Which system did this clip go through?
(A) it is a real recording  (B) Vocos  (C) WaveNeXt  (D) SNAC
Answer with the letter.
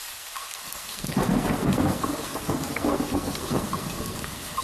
D